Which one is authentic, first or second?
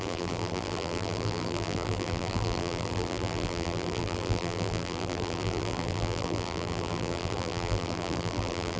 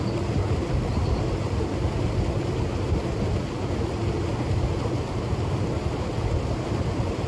second